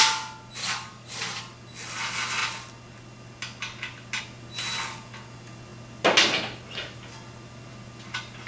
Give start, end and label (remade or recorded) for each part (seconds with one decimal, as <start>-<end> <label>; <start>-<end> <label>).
0.0-0.6 recorded; 0.6-1.4 remade; 1.4-8.5 recorded